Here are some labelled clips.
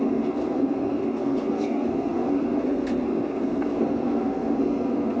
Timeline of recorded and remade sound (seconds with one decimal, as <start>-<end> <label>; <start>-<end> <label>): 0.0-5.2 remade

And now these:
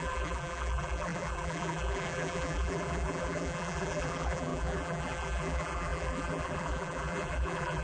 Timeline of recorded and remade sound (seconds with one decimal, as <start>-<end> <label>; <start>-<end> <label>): 0.0-7.8 remade

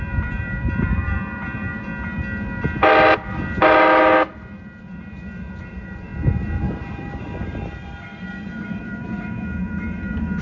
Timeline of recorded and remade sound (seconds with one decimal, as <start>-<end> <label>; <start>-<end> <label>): 0.0-1.9 remade; 1.9-4.8 recorded; 4.8-10.4 remade

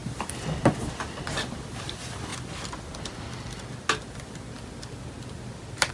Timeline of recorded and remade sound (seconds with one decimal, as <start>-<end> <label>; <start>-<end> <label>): 0.0-1.0 recorded; 1.0-2.3 remade; 2.3-5.9 recorded

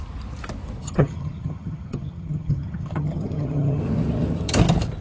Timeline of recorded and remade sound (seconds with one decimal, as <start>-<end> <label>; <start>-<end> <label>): 0.0-0.8 recorded; 0.8-3.8 remade; 3.8-5.0 recorded

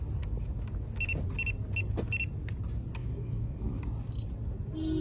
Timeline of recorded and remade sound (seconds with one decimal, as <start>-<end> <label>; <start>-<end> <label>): 0.0-3.0 recorded; 3.0-3.8 remade; 3.8-5.0 recorded

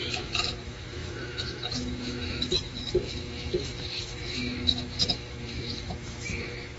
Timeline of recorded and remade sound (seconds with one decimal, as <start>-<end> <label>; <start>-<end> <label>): 0.0-6.8 remade

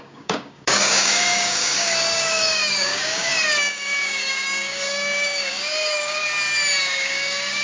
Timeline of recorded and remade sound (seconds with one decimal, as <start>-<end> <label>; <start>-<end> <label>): 0.0-6.2 remade; 6.2-6.8 recorded; 6.8-7.6 remade